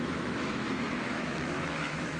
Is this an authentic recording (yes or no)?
no